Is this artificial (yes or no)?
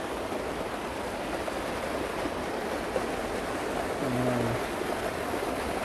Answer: no